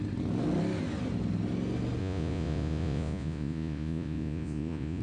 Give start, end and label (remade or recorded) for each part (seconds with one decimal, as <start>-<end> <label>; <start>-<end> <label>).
0.0-2.0 recorded; 2.0-5.0 remade